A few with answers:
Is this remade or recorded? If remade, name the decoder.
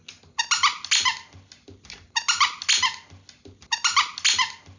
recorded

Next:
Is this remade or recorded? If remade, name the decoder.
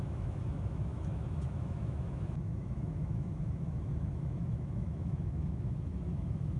remade, autoencoder, DAC-VAE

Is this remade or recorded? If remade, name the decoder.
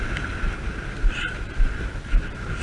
remade, vocoder, BigVGAN v2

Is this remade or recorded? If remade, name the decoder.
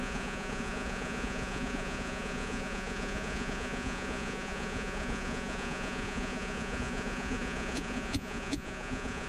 remade, vocoder, Vocos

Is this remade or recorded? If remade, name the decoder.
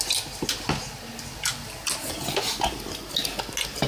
recorded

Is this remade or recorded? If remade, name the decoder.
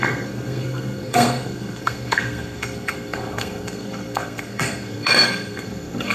remade, codec, SNAC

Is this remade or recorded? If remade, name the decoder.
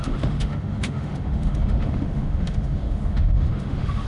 remade, autoencoder, DAC-VAE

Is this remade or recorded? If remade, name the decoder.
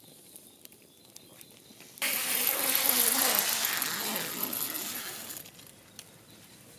recorded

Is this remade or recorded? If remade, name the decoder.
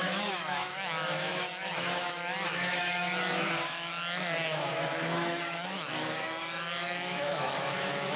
remade, autoencoder, DAC-VAE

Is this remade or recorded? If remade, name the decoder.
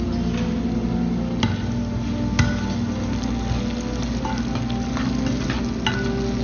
recorded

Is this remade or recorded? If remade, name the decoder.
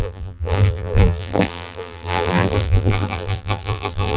remade, vocoder, BigVGAN v2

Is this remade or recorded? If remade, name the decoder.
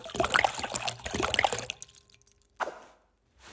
recorded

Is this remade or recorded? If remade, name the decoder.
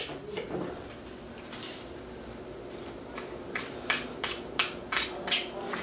recorded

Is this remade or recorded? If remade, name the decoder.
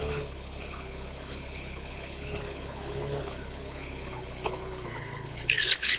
remade, codec, HILCodec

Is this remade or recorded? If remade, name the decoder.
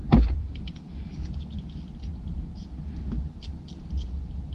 recorded